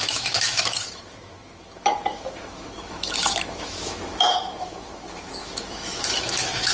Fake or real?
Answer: fake